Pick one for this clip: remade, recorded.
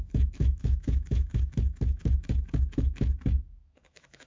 remade